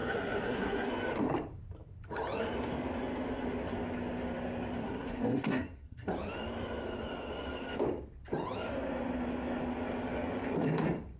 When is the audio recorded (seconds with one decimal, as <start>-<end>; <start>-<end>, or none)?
0.9-4.8; 6.1-11.2

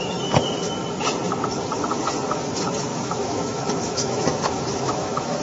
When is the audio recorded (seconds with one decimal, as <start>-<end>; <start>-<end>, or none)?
0.0-2.9

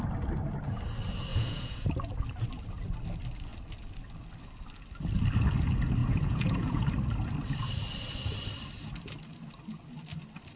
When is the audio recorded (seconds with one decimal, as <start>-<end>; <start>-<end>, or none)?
0.0-1.3; 1.9-6.0; 6.9-10.6

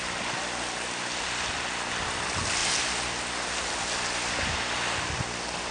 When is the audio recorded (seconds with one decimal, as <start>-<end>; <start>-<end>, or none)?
0.0-5.7

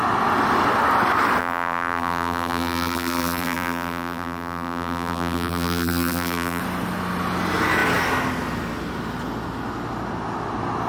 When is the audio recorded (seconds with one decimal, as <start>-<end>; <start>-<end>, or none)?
0.0-1.4; 6.6-10.9

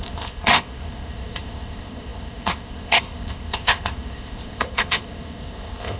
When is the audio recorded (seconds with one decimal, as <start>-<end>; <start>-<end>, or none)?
none

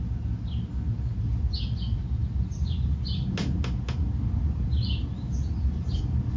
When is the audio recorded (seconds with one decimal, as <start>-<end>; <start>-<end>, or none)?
0.0-6.4